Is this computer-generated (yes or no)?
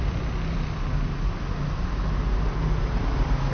no